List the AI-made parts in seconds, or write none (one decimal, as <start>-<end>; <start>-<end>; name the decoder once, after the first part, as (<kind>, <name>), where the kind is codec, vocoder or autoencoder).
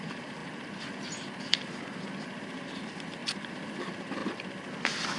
none